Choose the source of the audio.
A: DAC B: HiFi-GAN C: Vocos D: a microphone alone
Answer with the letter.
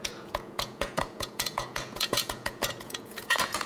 C